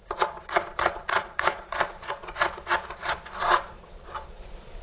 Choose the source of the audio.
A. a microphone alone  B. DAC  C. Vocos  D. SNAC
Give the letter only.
C